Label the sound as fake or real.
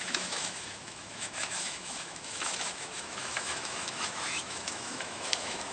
fake